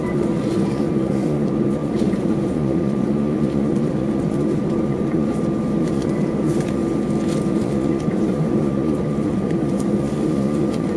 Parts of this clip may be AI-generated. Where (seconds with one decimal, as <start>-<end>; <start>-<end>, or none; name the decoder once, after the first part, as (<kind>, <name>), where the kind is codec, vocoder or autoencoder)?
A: 0.0-5.3 (vocoder, Vocos); 5.8-6.8; 7.5-11.0